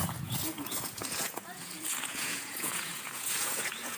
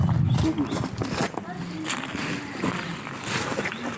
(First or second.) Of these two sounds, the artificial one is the first